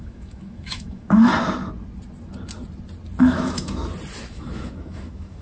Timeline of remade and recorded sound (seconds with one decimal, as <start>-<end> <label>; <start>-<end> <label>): 0.0-1.3 remade; 1.3-3.2 recorded; 3.2-3.8 remade; 3.8-4.3 recorded; 4.3-5.4 remade